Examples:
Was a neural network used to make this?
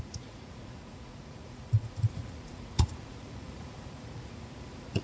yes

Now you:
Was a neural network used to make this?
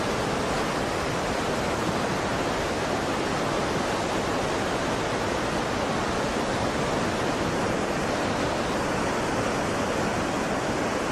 no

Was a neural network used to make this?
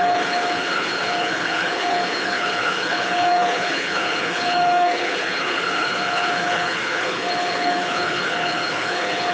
yes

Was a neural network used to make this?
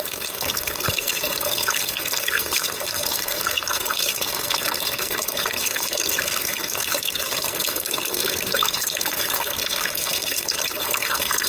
yes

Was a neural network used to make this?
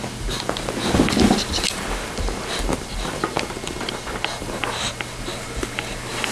no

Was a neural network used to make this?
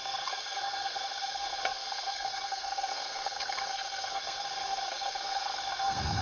yes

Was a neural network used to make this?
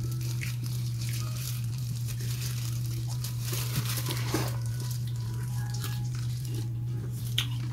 yes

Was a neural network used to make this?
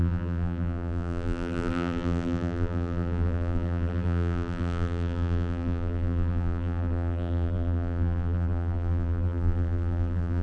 yes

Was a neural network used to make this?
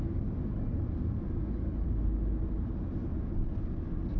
no